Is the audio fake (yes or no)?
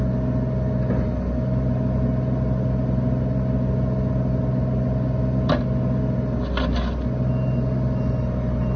no